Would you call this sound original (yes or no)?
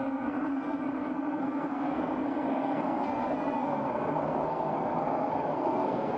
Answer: no